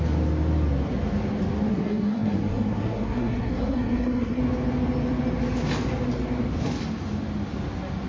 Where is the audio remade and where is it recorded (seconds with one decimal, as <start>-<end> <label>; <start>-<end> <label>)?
0.0-1.7 recorded; 1.7-4.4 remade; 4.4-8.1 recorded